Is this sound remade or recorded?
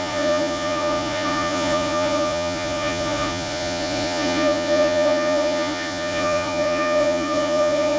remade